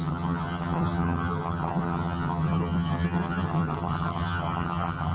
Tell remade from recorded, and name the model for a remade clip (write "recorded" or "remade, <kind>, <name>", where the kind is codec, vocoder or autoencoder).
remade, vocoder, HiFi-GAN